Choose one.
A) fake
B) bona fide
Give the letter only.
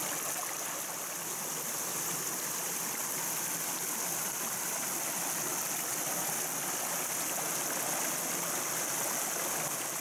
B